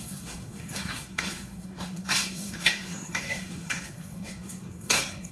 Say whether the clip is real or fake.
fake